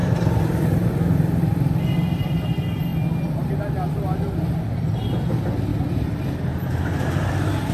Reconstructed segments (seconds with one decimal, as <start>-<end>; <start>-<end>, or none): 0.0-0.9; 5.7-7.3